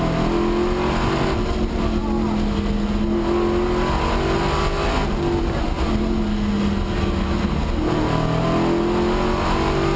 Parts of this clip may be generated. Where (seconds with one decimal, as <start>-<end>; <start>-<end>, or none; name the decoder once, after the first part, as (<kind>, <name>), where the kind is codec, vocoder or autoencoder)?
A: none